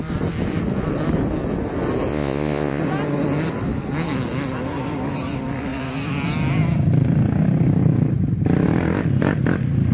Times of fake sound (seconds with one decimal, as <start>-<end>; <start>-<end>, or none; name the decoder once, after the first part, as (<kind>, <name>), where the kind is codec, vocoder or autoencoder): 2.1-2.8 (vocoder, Vocos)